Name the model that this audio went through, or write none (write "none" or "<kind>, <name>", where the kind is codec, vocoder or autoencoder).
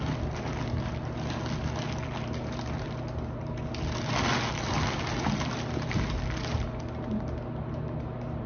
none